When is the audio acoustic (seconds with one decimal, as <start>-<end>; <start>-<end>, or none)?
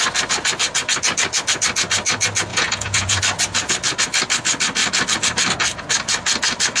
0.0-2.5; 3.2-6.8